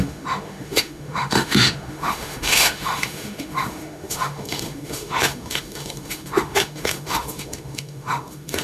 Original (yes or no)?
no